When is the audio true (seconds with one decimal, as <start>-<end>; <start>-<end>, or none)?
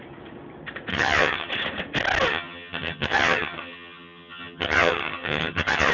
0.0-0.9; 1.5-2.3